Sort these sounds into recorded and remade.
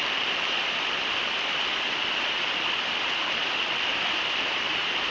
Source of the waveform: remade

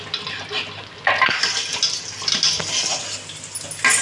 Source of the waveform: recorded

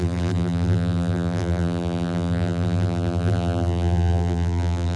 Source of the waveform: remade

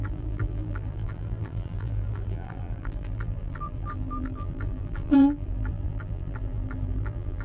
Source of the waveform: remade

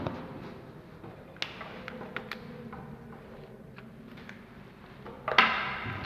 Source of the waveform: recorded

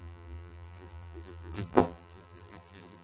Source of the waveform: remade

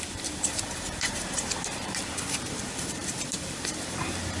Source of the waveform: remade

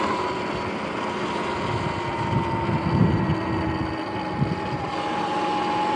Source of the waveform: recorded